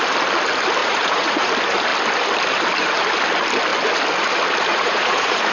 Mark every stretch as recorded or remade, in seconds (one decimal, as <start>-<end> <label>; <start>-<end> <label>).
0.0-0.8 recorded; 0.8-1.5 remade; 1.5-4.7 recorded; 4.7-5.5 remade